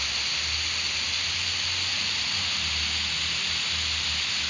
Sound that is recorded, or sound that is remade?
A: recorded